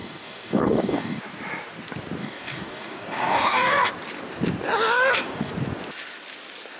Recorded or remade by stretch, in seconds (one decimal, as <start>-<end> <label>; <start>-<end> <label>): 0.0-1.2 remade; 1.2-2.2 recorded; 2.2-3.9 remade; 3.9-5.0 recorded; 5.0-5.5 remade; 5.5-6.8 recorded